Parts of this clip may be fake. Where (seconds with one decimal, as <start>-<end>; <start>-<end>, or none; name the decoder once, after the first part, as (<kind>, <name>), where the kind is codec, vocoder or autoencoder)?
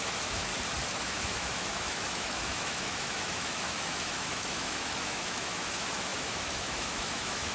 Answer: 0.0-0.5 (autoencoder, DAC-VAE); 1.0-7.5